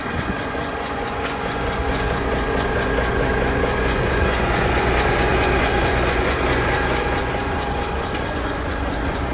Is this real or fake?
fake